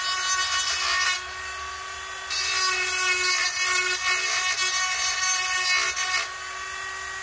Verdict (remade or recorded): recorded